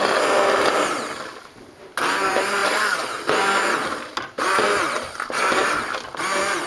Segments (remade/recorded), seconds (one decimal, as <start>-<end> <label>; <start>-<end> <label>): 0.0-6.7 recorded